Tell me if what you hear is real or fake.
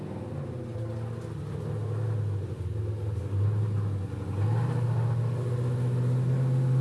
real